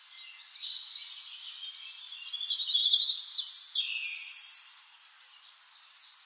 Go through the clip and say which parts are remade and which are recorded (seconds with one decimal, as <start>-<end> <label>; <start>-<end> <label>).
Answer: 0.0-6.3 recorded